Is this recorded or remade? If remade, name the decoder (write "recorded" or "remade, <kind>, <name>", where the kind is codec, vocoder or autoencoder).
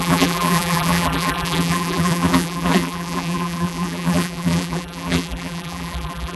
remade, vocoder, BigVGAN v2